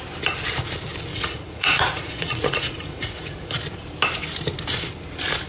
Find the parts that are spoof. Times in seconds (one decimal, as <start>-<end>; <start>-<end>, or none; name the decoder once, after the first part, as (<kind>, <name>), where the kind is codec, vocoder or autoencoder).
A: 1.1-3.5 (vocoder, Vocos)